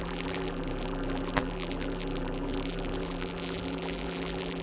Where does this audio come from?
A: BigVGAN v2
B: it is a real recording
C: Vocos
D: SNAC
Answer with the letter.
A